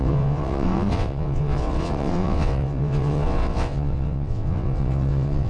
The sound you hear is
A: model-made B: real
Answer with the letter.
A